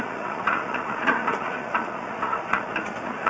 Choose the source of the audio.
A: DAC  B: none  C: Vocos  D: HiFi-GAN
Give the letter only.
C